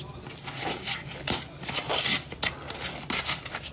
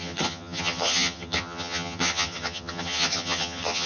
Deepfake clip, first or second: second